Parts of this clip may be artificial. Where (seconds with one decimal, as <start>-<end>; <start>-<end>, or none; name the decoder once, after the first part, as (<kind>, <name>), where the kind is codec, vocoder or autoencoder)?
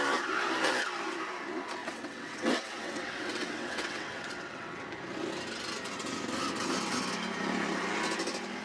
1.8-4.8 (vocoder, WaveNeXt)